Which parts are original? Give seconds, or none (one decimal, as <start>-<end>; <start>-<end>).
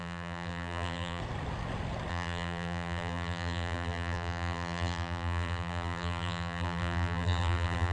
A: 1.2-2.1